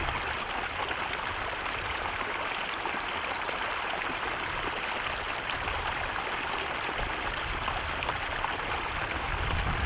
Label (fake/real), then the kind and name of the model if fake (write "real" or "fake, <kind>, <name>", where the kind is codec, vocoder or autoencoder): real